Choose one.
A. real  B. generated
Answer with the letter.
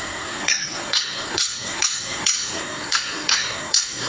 B